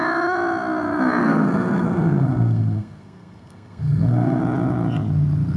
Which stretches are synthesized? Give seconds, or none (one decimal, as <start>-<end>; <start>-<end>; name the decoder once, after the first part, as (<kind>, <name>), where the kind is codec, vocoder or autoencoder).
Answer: 1.2-4.4 (codec, SNAC)